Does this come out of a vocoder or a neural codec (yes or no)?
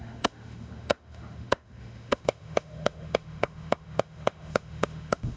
yes